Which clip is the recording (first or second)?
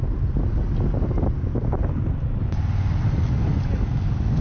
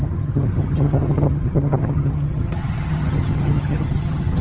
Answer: first